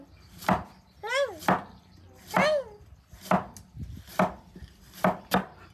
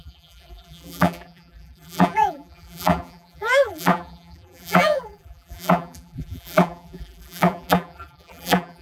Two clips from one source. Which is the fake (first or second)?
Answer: second